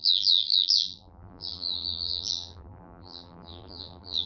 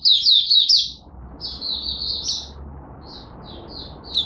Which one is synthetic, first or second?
first